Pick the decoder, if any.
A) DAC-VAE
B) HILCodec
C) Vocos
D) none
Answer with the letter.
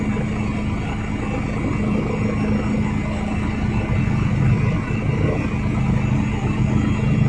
D